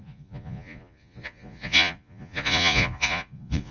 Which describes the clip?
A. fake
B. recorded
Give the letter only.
A